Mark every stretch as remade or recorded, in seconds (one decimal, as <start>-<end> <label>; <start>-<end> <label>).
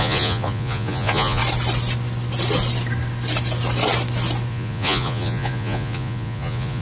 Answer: 0.0-1.4 remade; 1.4-4.5 recorded; 4.5-6.8 remade